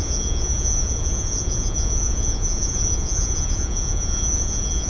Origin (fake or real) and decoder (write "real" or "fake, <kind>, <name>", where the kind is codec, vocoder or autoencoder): fake, vocoder, Vocos